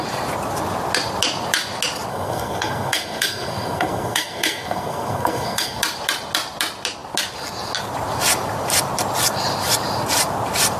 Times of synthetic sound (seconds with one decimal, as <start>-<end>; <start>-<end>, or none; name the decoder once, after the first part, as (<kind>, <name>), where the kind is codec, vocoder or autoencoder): 2.1-5.8 (codec, SNAC)